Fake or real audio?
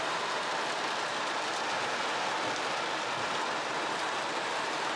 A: real